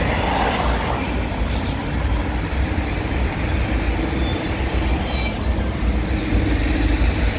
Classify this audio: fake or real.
real